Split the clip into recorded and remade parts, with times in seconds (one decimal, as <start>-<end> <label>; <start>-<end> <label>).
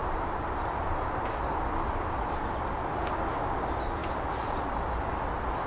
0.0-1.0 remade; 1.0-4.0 recorded; 4.0-4.6 remade; 4.6-5.7 recorded